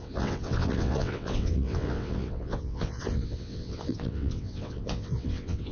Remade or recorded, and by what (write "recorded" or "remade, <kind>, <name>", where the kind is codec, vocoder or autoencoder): remade, vocoder, WaveNeXt